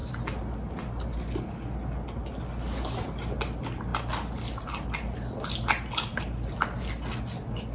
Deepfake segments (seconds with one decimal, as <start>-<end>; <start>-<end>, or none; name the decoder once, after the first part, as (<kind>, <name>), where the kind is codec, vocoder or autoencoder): none